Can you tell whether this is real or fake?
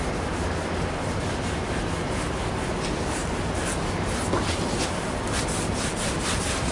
real